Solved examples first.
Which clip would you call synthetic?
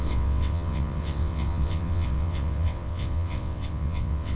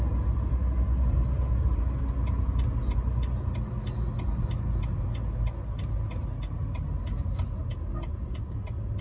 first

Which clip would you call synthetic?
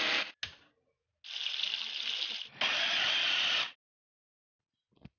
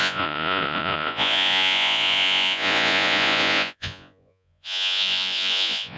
second